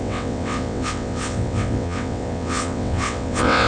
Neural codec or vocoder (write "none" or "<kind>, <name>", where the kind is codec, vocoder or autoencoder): vocoder, WaveNeXt